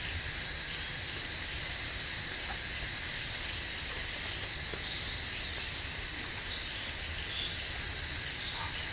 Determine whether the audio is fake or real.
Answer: real